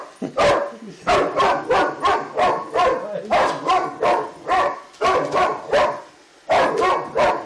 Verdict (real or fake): real